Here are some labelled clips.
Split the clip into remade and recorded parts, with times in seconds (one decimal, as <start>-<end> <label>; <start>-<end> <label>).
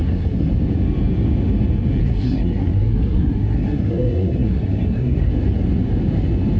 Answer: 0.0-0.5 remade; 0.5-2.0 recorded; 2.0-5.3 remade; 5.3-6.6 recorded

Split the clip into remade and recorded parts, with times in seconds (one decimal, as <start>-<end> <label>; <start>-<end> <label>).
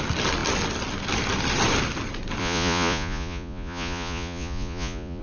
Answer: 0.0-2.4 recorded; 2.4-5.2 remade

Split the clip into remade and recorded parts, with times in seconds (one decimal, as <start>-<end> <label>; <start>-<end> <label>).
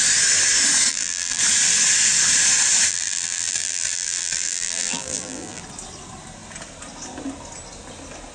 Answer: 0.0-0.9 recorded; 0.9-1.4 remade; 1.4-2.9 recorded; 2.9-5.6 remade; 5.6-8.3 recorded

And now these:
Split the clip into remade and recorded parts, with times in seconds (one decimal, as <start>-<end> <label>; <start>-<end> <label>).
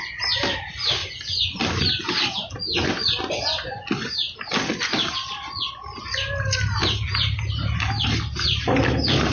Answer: 0.0-9.3 recorded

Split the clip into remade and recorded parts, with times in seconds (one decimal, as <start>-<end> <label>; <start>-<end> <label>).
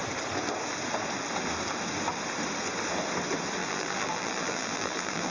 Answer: 0.0-3.6 recorded; 3.6-5.3 remade